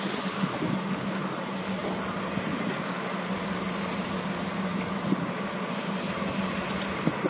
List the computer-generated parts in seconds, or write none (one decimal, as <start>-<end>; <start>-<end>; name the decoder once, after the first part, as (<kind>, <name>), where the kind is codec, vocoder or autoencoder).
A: none